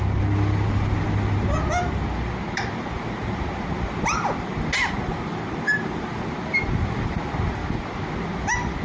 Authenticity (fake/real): real